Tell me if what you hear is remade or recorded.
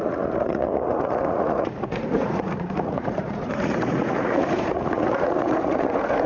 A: remade